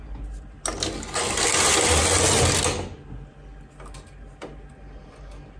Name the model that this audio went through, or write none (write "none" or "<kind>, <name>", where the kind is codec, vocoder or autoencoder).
none